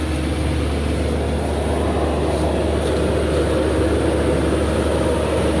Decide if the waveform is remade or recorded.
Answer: recorded